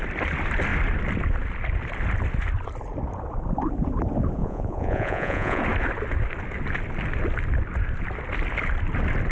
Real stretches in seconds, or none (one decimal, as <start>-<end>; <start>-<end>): 0.0-4.4; 5.6-9.3